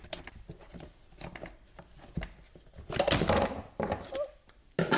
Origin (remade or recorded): recorded